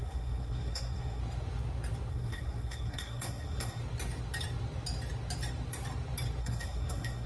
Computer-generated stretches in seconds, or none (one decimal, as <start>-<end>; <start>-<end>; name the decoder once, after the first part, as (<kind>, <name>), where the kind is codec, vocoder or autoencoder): 0.0-1.2 (codec, SNAC); 2.1-3.8; 6.4-7.3